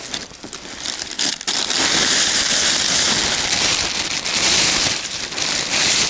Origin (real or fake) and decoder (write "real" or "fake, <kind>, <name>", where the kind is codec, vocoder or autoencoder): real